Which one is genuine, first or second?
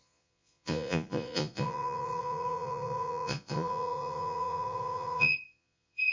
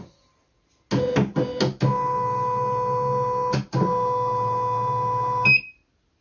second